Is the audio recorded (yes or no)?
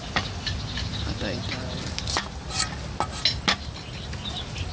yes